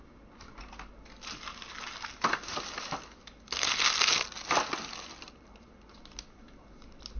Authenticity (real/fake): real